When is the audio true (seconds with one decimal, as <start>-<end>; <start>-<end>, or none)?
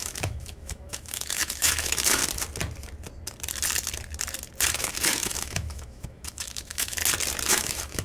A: 2.2-4.7; 7.0-7.5